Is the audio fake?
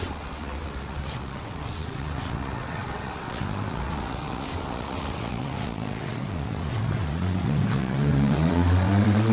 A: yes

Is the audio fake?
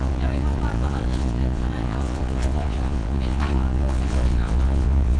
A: yes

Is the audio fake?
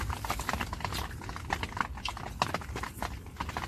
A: no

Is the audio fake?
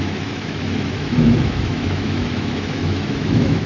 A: yes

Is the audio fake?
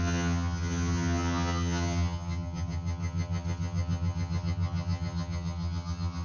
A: yes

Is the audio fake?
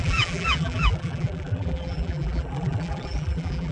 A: yes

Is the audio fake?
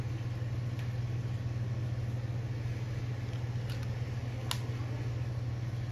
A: no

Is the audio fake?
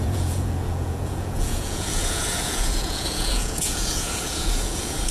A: yes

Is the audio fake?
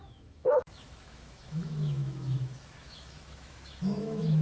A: yes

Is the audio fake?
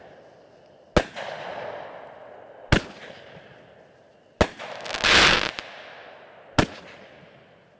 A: no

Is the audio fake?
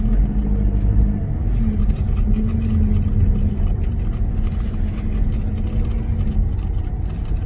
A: no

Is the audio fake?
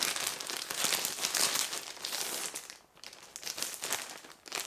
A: no